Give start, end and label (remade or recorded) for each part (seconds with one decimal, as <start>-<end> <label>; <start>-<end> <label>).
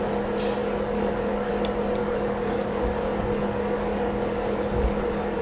0.0-0.6 recorded; 0.6-1.5 remade; 1.5-2.0 recorded; 2.0-5.4 remade